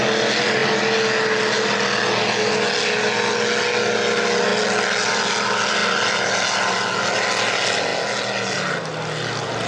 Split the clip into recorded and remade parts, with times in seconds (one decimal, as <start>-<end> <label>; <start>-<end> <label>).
0.0-9.7 recorded